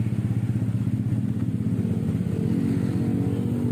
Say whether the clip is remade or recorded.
recorded